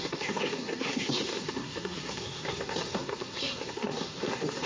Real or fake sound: fake